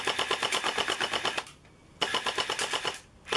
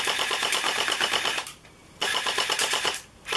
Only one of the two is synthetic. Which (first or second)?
second